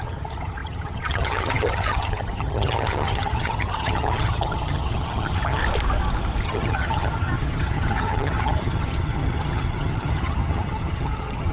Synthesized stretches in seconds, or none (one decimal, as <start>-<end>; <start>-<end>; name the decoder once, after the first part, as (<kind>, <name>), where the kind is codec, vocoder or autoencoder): 0.0-5.6 (vocoder, HiFi-GAN); 6.4-11.5